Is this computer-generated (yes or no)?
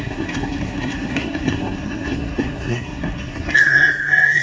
yes